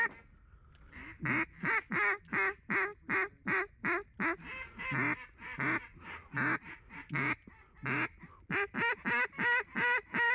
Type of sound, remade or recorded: recorded